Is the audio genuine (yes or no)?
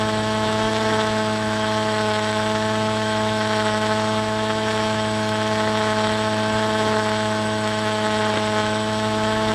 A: no